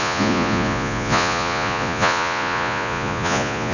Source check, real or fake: fake